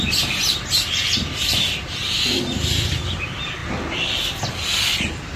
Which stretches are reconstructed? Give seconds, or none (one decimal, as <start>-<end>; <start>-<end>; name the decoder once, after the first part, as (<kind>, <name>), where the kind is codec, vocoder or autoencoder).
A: none